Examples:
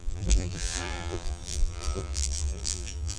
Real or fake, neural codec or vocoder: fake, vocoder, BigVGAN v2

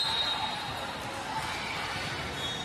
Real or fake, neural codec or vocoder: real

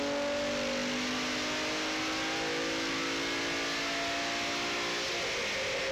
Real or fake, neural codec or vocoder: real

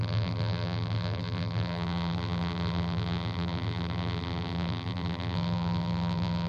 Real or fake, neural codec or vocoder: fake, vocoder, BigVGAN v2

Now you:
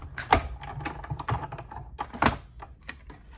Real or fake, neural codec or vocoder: fake, vocoder, BigVGAN v2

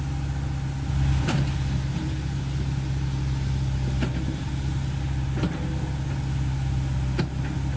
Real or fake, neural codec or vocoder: real